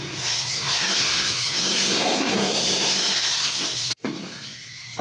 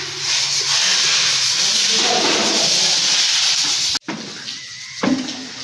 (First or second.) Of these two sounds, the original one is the second